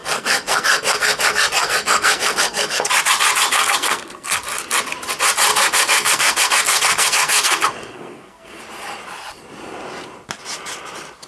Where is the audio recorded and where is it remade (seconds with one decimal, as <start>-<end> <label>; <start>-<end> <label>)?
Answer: 0.0-2.9 remade; 2.9-3.5 recorded; 3.5-4.4 remade; 4.4-5.5 recorded; 5.5-8.6 remade; 8.6-11.3 recorded